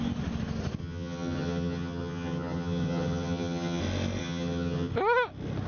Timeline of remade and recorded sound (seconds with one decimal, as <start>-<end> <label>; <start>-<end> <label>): 0.0-0.8 recorded; 0.8-3.8 remade; 3.8-4.2 recorded; 4.2-4.9 remade; 4.9-5.7 recorded